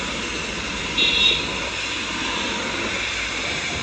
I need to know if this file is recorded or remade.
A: recorded